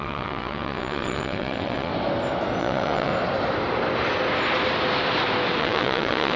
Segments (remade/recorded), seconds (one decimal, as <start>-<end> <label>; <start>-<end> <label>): 0.0-1.9 remade; 1.9-2.6 recorded; 2.6-3.1 remade; 3.1-5.6 recorded; 5.6-6.4 remade